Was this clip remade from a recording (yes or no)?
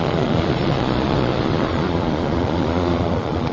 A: yes